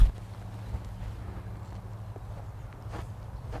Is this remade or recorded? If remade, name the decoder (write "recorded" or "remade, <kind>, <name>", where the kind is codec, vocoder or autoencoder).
recorded